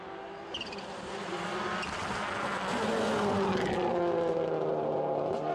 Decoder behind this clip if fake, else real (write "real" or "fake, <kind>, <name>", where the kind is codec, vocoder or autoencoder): real